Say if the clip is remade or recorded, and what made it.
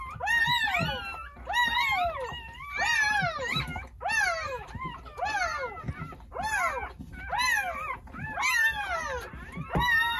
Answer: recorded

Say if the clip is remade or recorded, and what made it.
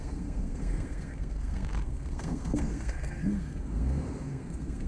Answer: remade, codec, SNAC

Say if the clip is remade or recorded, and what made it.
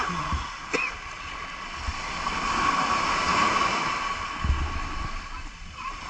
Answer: recorded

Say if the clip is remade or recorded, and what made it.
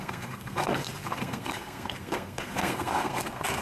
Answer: remade, codec, SNAC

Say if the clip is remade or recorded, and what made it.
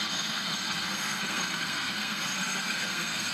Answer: remade, codec, SNAC